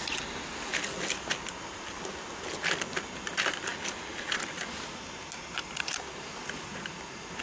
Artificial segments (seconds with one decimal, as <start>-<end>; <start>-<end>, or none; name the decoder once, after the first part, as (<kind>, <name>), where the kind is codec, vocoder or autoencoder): 6.1-7.4 (vocoder, BigVGAN v2)